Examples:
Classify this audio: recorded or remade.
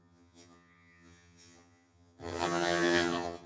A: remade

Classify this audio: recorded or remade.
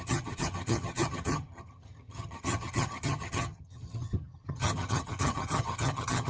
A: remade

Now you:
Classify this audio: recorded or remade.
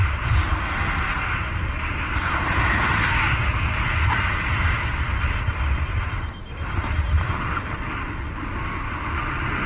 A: recorded